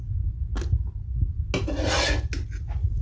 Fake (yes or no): no